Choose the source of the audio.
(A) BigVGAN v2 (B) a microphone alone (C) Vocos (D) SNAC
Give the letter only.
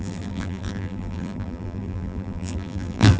A